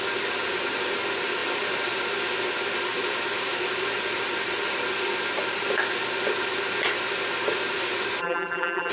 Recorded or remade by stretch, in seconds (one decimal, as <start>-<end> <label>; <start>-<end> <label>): 0.0-8.2 recorded; 8.2-8.9 remade